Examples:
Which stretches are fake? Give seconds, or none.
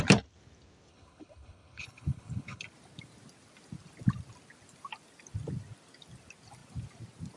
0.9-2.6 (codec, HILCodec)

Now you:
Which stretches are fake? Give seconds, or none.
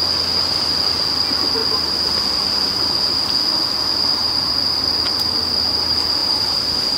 1.6-2.1 (vocoder, BigVGAN v2); 4.2-4.8; 6.2-7.0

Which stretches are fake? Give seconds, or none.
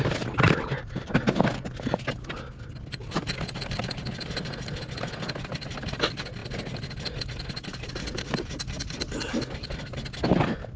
none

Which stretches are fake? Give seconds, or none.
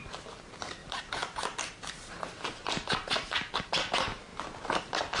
0.8-3.7 (vocoder, BigVGAN v2)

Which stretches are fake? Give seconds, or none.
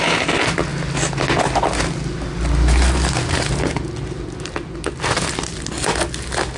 none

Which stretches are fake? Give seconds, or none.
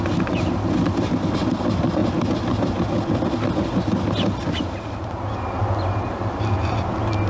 none